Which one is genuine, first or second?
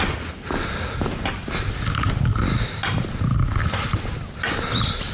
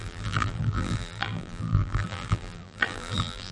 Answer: first